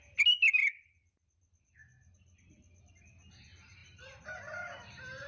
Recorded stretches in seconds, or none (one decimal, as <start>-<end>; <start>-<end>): 0.0-0.6; 2.9-3.8; 4.4-5.3